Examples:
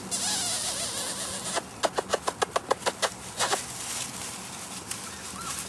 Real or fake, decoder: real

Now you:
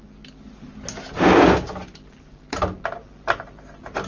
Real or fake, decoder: real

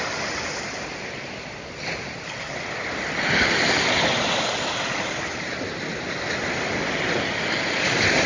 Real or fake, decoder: real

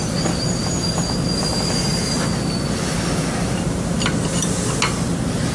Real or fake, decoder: real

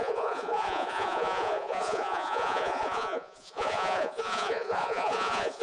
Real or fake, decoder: fake, vocoder, Vocos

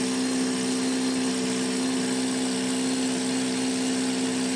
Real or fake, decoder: real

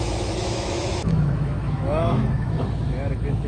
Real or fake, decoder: fake, autoencoder, DAC-VAE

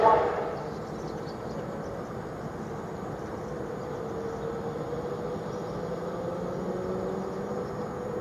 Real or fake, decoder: real